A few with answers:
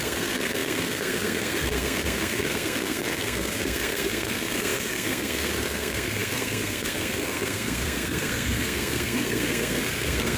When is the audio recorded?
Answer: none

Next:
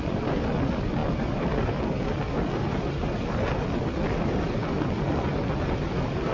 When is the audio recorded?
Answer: 0.0-6.3

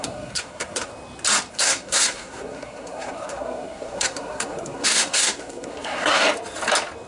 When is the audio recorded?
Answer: 0.9-1.5; 6.2-7.1

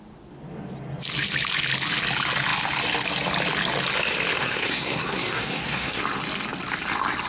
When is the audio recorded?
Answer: 0.0-4.4; 6.0-7.3

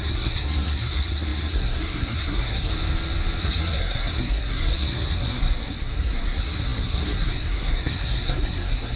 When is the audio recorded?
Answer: 2.7-3.4

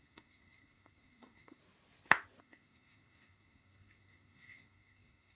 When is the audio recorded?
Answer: 1.6-2.4